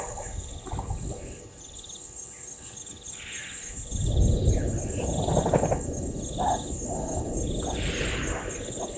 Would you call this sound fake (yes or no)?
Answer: no